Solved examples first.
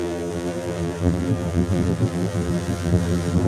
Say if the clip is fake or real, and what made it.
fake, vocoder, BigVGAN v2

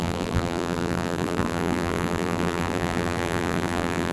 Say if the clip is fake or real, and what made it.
fake, vocoder, BigVGAN v2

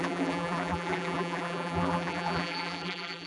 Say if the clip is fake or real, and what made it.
fake, vocoder, BigVGAN v2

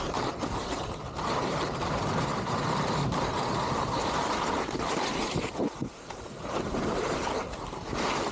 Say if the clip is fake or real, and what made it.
fake, vocoder, BigVGAN v2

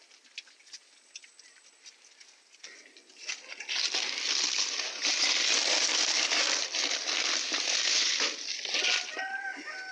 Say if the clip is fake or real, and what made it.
real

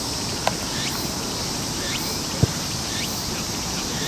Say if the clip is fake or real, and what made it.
real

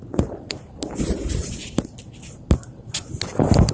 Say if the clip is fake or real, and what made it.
fake, vocoder, BigVGAN v2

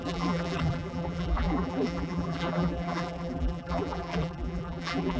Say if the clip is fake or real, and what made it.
fake, vocoder, BigVGAN v2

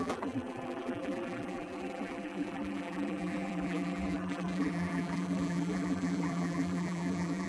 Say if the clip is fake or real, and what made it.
fake, vocoder, BigVGAN v2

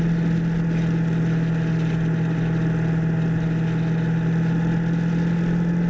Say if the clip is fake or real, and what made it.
real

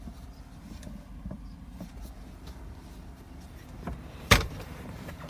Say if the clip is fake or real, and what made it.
fake, vocoder, BigVGAN v2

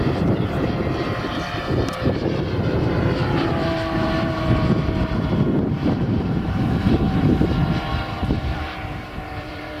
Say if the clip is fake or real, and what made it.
fake, vocoder, BigVGAN v2